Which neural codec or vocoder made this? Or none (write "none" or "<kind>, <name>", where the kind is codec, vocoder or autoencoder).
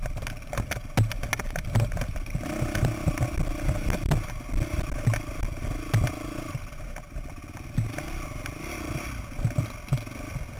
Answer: none